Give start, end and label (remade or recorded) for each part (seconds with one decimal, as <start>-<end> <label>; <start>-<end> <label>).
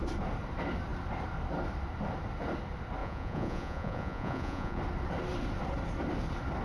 0.0-3.0 recorded; 3.0-4.8 remade; 4.8-6.6 recorded